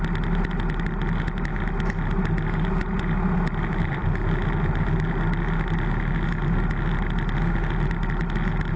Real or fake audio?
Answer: real